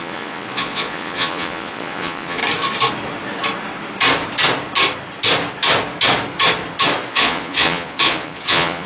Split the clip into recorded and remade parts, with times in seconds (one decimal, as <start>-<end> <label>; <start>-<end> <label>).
0.0-2.4 remade; 2.4-7.1 recorded; 7.1-8.9 remade